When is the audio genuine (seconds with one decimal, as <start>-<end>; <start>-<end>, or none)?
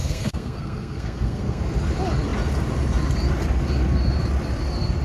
1.6-5.0